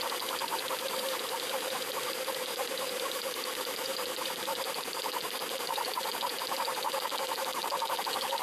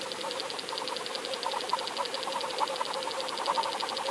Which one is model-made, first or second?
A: first